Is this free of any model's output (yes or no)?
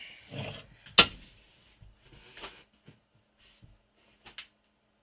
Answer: yes